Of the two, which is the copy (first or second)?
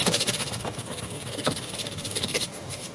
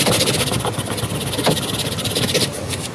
first